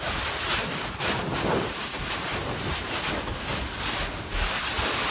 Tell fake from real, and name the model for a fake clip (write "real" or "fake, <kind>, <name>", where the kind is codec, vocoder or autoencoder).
real